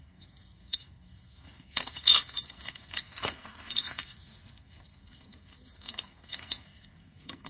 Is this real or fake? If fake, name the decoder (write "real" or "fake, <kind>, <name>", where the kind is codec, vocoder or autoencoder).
fake, codec, SNAC